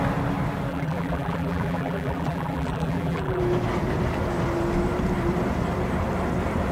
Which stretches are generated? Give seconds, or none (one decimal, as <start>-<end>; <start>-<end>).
0.7-3.4